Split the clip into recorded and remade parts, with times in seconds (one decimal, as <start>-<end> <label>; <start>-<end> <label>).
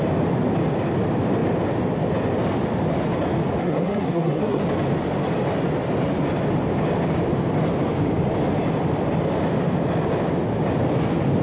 0.0-3.6 recorded; 3.6-4.6 remade; 4.6-11.4 recorded